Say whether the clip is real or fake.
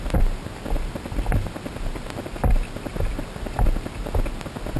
real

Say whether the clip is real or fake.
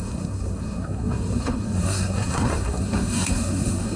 fake